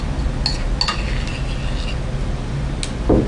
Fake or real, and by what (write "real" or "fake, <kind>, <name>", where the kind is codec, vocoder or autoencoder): real